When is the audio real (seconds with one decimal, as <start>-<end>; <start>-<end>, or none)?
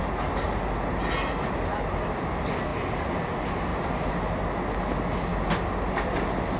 0.0-6.6